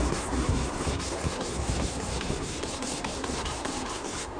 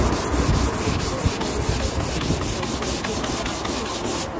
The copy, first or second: first